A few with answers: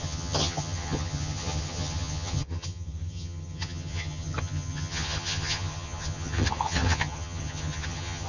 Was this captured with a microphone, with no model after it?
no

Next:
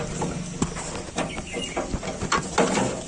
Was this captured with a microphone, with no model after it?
yes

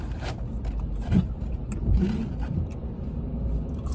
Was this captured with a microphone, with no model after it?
yes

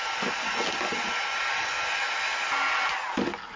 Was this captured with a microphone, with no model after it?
yes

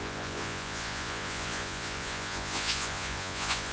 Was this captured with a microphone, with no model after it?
no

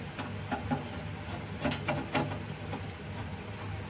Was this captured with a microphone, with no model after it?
yes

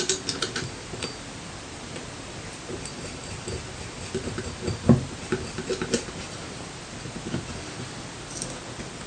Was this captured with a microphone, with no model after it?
yes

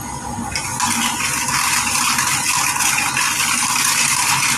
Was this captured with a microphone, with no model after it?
yes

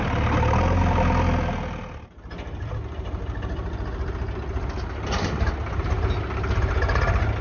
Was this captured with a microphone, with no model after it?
yes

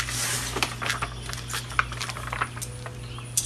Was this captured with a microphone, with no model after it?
yes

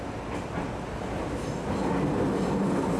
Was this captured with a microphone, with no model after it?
yes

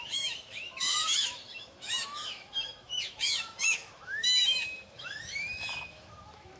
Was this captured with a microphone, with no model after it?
no